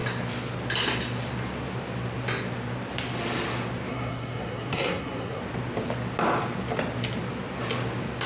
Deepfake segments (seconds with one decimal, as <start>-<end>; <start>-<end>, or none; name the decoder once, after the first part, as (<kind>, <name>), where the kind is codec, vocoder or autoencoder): 3.9-5.4 (codec, SNAC)